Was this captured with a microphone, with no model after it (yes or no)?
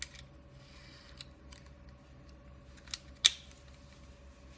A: yes